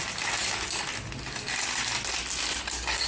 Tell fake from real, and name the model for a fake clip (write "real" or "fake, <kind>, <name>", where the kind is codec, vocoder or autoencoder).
real